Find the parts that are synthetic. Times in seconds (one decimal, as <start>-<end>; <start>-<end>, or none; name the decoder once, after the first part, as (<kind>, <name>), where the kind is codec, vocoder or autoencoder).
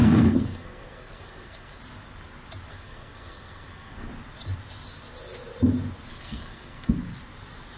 0.0-1.8 (codec, SNAC); 2.7-4.1; 6.1-6.9